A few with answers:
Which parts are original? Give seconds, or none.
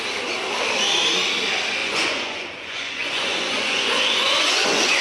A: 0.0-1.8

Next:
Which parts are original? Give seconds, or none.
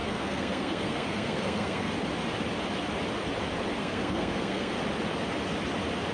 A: 1.9-3.8; 4.7-6.1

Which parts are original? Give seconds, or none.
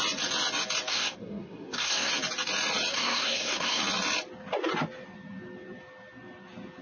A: 0.0-0.9; 2.1-2.9; 3.8-6.8